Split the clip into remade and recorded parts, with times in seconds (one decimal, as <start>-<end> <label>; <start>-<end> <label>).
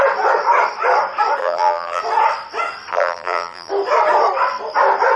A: 0.0-1.4 recorded; 1.4-2.0 remade; 2.0-2.9 recorded; 2.9-3.7 remade; 3.7-5.2 recorded